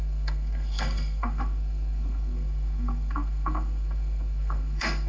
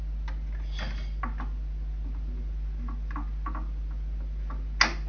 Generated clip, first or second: first